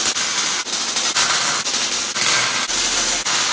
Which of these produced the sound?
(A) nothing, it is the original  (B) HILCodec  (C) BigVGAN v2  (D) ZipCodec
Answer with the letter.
A